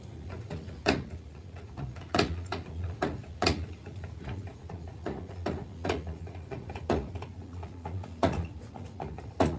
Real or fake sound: fake